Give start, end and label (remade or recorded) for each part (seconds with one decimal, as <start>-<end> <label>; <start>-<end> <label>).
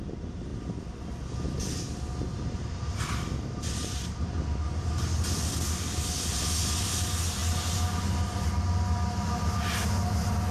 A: 0.0-2.3 recorded; 2.3-4.4 remade; 4.4-10.5 recorded